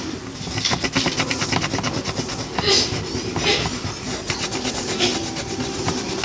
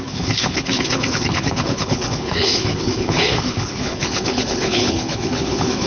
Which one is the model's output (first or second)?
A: second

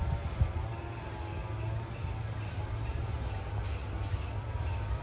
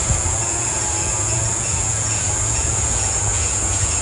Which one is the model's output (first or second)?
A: second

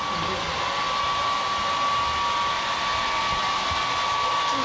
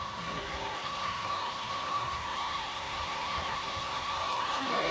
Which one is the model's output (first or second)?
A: second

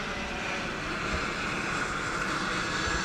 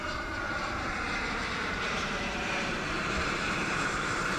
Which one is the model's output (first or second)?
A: second